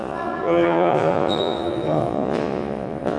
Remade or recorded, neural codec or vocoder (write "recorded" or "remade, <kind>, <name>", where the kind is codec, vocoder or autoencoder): remade, vocoder, Vocos